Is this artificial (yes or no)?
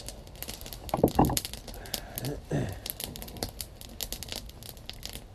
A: no